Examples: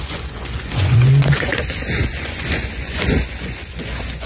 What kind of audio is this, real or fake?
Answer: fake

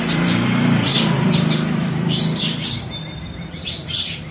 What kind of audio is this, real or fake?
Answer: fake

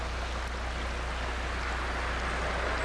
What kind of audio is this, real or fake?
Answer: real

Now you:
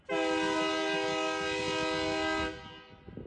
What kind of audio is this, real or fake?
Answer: real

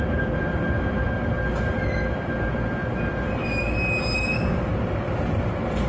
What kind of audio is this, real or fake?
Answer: real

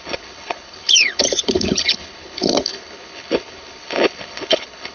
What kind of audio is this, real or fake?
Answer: fake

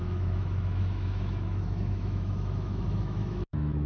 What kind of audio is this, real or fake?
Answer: fake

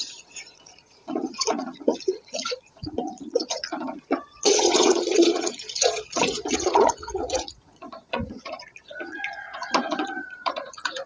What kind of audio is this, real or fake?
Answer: fake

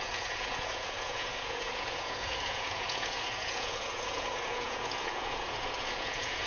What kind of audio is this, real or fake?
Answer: fake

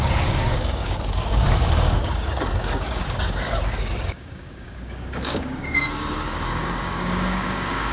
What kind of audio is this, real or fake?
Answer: fake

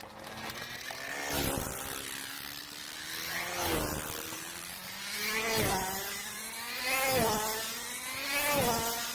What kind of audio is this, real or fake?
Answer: real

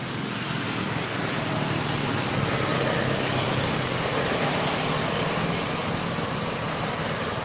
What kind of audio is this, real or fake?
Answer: real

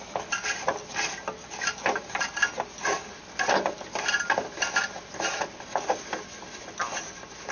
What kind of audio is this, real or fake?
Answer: real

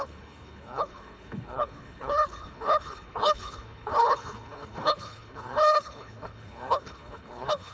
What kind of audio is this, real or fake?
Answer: fake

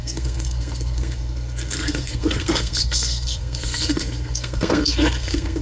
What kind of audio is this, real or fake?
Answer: fake